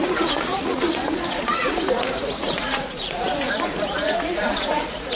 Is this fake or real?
fake